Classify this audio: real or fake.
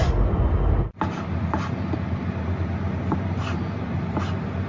real